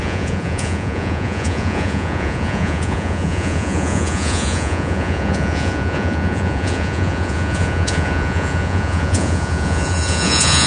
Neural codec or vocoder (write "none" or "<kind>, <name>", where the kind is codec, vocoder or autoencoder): vocoder, Vocos